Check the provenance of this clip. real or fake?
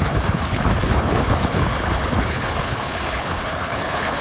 fake